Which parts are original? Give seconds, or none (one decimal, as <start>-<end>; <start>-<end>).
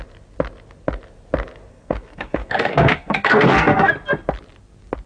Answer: 0.0-1.7; 3.9-5.1